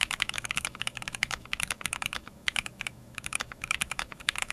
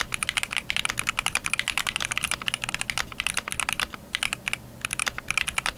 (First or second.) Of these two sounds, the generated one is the first